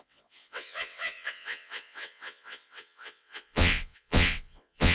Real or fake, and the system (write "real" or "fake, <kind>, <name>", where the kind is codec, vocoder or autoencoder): fake, vocoder, WaveNeXt